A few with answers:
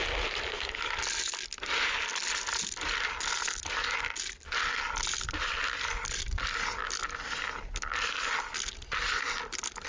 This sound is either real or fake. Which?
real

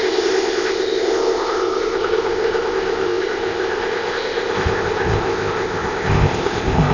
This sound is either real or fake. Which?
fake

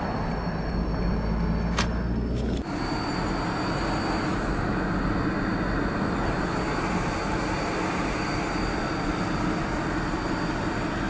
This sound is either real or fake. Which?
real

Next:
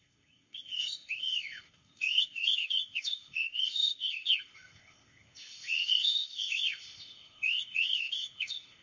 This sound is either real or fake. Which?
fake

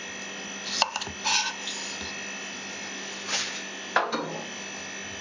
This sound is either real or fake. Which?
real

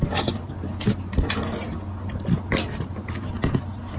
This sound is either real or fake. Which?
real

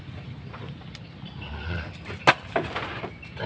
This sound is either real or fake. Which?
real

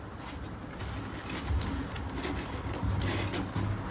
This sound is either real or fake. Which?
real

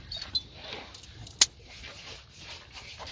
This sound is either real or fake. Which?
real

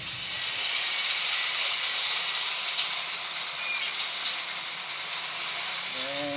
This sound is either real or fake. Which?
real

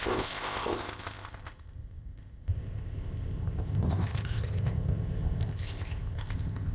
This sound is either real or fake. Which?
fake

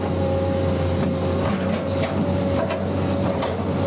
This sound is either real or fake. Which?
real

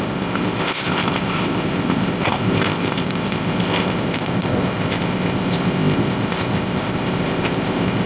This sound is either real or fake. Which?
fake